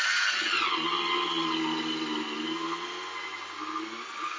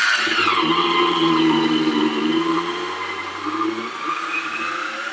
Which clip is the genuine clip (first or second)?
first